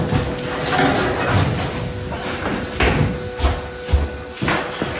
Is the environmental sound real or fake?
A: real